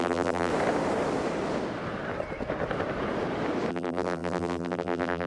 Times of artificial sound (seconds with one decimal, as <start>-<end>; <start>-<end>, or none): 0.0-0.5; 3.7-5.3